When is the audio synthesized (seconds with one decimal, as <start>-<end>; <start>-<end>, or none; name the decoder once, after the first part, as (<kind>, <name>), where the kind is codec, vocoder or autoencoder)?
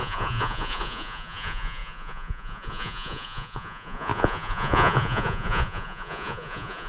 0.0-6.9 (vocoder, Vocos)